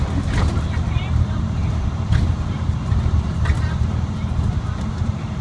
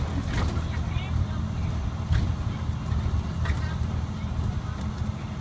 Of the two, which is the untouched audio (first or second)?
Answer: second